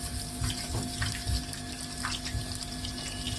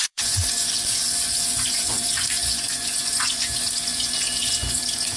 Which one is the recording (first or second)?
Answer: first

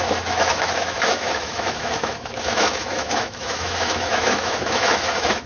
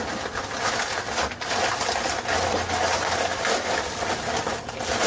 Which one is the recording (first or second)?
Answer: second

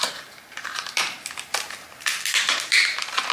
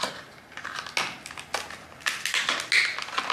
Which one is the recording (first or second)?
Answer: second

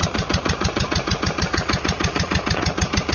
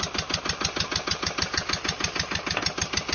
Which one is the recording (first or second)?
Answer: second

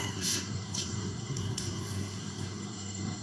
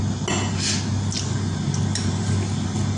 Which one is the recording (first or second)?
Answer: second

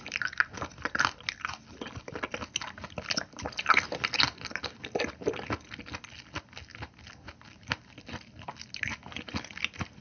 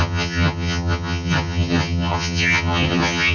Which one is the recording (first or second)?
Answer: first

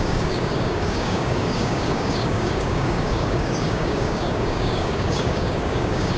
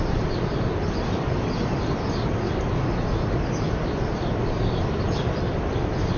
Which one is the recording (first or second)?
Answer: second